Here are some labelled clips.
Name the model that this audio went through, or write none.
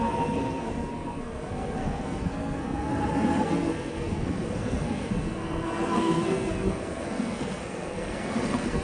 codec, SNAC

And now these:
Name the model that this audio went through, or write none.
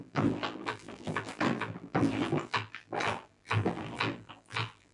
vocoder, BigVGAN v2